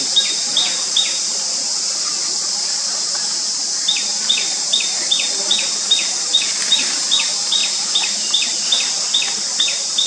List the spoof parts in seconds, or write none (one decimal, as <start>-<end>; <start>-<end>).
0.6-3.5; 4.1-4.8; 7.6-8.7